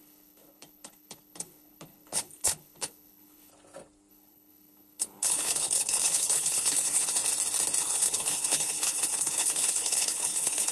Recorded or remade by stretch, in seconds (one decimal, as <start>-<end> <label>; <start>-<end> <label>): 0.0-3.5 remade; 3.5-4.1 recorded; 4.1-7.2 remade; 7.2-7.8 recorded; 7.8-10.7 remade